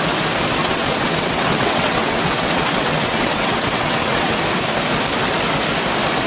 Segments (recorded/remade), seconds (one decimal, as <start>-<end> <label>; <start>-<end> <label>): 0.0-0.6 recorded; 0.6-4.4 remade; 4.4-6.3 recorded